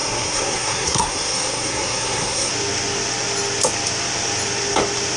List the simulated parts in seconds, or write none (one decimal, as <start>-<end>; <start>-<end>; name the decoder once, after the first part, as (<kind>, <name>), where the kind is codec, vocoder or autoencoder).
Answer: 0.0-2.5 (codec, SNAC)